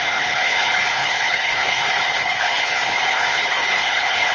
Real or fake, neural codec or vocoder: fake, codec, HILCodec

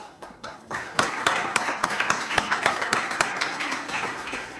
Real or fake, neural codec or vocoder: fake, codec, SNAC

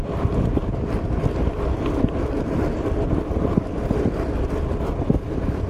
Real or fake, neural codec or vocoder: fake, vocoder, BigVGAN v2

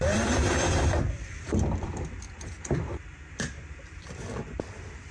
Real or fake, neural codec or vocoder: fake, vocoder, BigVGAN v2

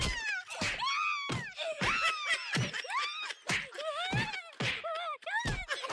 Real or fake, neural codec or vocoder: real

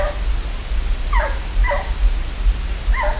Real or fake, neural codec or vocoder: real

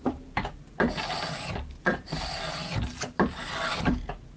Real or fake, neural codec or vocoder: real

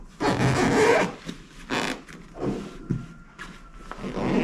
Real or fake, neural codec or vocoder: real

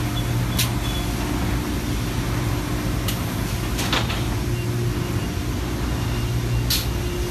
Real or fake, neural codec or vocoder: real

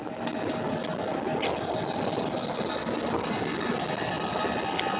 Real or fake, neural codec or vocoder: real